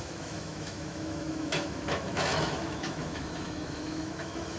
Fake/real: fake